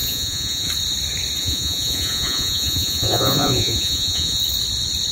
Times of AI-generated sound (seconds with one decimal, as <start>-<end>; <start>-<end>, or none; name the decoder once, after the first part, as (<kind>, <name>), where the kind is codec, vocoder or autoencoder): 0.0-0.7 (vocoder, Vocos); 1.4-4.4